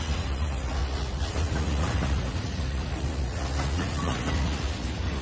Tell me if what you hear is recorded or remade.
remade